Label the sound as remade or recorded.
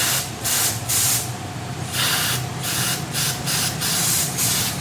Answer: remade